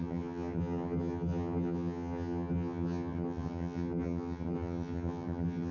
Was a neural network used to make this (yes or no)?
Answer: yes